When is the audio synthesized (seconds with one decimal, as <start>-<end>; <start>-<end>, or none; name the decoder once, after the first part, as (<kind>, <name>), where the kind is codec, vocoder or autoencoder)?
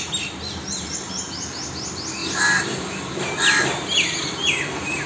2.2-3.2 (vocoder, BigVGAN v2)